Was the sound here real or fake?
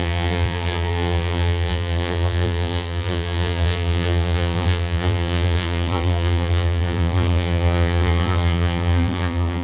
fake